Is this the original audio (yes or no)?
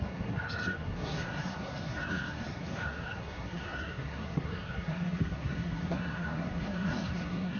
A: no